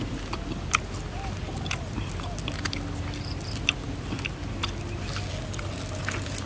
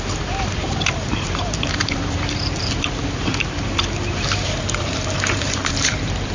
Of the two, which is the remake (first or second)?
second